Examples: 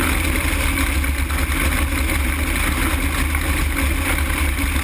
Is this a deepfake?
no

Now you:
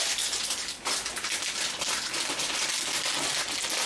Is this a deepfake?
no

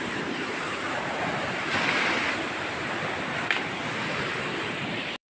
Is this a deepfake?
yes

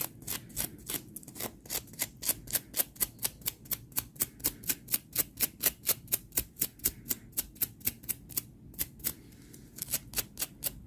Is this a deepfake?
no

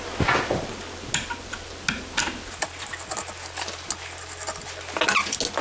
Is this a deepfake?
no